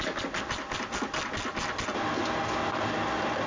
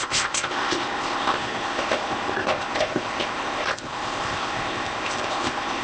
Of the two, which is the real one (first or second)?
first